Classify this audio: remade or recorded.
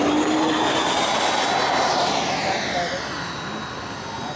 recorded